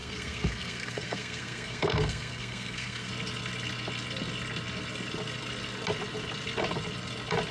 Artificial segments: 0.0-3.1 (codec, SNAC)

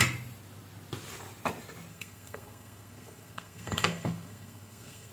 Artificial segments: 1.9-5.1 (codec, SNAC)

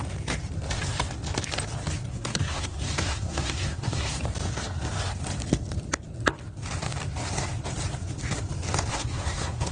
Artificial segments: 2.1-4.2 (codec, SNAC); 8.9-9.7

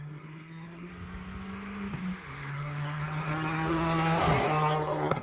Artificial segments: 0.0-0.9 (codec, SNAC); 2.5-5.2